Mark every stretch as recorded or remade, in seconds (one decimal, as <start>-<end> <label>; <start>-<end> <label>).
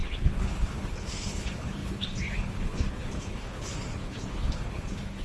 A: 0.0-5.2 remade